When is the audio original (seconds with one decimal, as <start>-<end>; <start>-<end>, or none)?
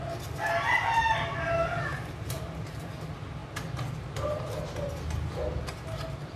0.0-1.9; 2.9-6.4